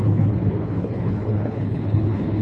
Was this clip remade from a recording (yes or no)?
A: yes